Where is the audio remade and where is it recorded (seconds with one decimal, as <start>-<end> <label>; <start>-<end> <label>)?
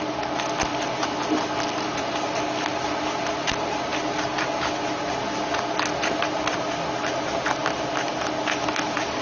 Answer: 0.0-3.9 recorded; 3.9-5.5 remade; 5.5-9.2 recorded